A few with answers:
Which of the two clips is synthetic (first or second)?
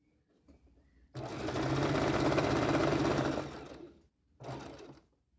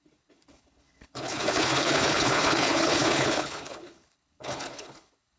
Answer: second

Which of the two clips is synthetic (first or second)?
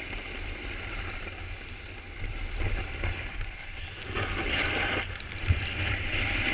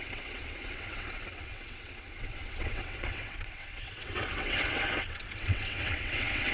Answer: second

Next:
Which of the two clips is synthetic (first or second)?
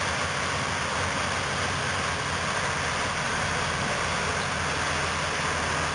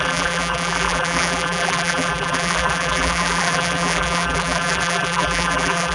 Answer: second